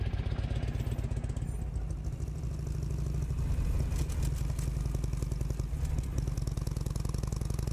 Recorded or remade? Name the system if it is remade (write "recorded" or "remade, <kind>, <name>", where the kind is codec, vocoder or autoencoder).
recorded